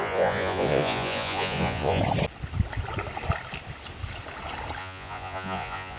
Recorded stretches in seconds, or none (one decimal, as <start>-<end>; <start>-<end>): 2.0-4.8